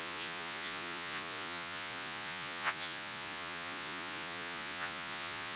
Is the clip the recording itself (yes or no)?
no